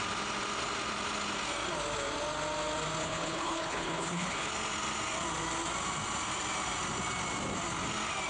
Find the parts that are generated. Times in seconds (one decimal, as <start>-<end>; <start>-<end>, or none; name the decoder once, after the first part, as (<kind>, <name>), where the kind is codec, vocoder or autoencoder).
3.0-4.5 (codec, HILCodec)